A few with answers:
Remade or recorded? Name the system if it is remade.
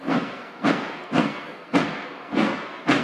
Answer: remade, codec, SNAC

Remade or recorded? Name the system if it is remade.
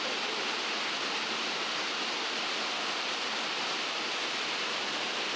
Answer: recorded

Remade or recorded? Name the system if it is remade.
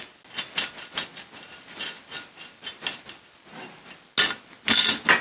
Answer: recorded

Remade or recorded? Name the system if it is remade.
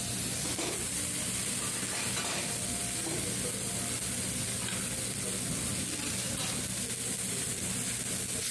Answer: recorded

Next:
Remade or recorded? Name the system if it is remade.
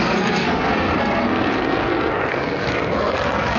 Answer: remade, codec, SNAC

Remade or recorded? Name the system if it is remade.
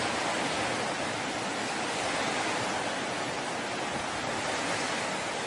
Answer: recorded